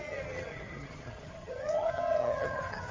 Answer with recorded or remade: remade